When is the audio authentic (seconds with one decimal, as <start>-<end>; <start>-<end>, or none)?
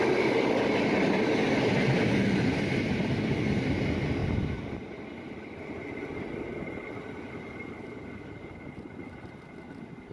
0.0-10.1